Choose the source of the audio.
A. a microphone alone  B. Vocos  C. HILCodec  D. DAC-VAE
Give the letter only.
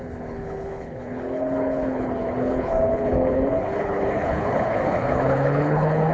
C